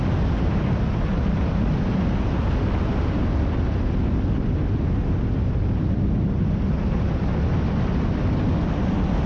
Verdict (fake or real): real